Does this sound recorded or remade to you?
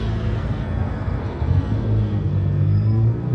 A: remade